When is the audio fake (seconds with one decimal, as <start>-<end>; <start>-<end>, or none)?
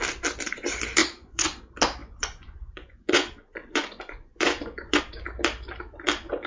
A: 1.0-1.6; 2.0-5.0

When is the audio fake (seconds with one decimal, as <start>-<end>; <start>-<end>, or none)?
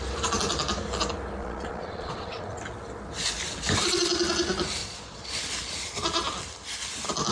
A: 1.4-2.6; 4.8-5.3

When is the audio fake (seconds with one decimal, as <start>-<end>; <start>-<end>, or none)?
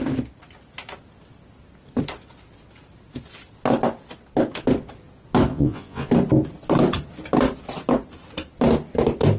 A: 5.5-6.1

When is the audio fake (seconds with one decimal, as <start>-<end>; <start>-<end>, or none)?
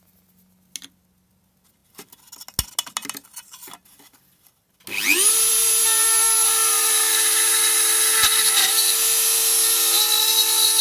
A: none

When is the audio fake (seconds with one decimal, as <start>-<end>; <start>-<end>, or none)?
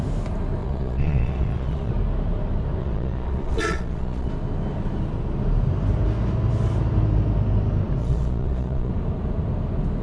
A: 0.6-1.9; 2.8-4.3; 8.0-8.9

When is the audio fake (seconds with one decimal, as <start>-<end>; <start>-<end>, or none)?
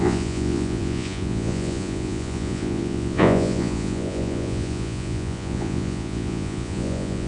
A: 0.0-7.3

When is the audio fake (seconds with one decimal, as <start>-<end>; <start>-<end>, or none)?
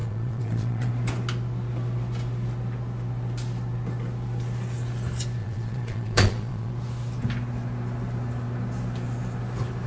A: 0.0-0.9; 5.4-6.7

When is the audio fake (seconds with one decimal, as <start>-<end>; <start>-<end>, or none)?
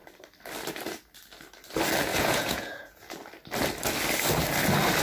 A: 2.1-3.1